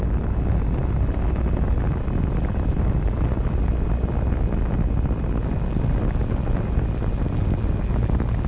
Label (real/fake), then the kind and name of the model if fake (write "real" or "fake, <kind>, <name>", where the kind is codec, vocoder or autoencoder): real